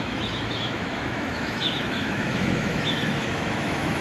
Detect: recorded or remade remade